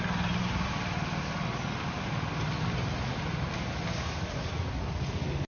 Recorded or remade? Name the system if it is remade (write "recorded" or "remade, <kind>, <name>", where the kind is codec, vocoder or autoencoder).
recorded